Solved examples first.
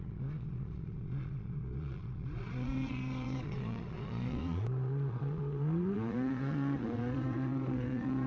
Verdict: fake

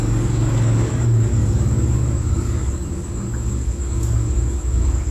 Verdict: fake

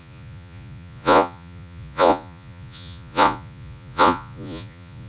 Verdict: fake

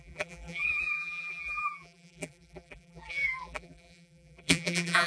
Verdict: fake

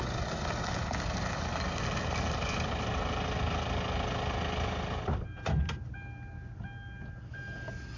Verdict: real